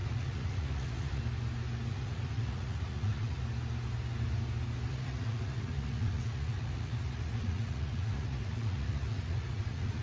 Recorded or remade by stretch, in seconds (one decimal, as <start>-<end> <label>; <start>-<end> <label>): 0.0-1.2 remade; 1.2-1.9 recorded; 1.9-3.4 remade; 3.4-4.9 recorded; 4.9-10.0 remade